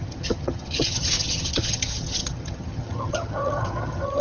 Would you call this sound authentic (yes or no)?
no